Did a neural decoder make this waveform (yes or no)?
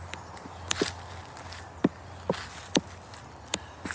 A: no